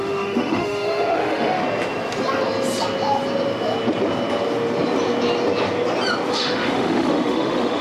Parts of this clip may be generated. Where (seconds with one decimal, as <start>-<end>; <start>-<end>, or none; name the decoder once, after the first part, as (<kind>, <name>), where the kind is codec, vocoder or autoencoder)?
0.0-1.6 (autoencoder, DAC-VAE); 6.3-7.8